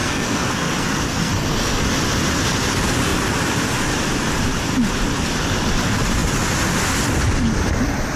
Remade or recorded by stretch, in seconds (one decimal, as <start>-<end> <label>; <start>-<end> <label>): 0.0-1.8 remade; 1.8-8.2 recorded